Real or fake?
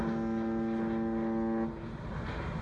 real